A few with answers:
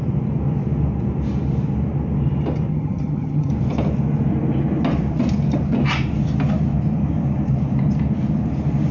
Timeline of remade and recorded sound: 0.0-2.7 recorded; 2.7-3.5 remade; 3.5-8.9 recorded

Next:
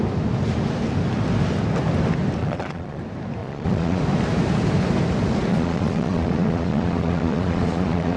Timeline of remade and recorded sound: 0.0-2.4 recorded; 2.4-3.0 remade; 3.0-3.4 recorded; 3.4-4.0 remade; 4.0-5.5 recorded; 5.5-8.2 remade

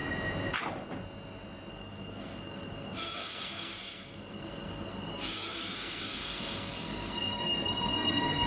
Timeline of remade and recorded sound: 0.0-1.7 recorded; 1.7-8.5 remade

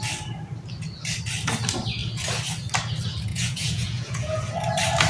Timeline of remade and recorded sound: 0.0-3.3 recorded; 3.3-4.4 remade; 4.4-5.1 recorded

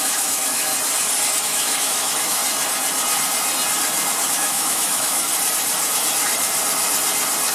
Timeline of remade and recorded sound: 0.0-0.7 remade; 0.7-1.4 recorded; 1.4-2.4 remade; 2.4-4.3 recorded; 4.3-5.3 remade; 5.3-7.5 recorded

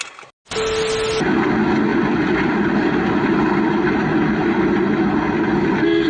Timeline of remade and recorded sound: 0.0-6.1 recorded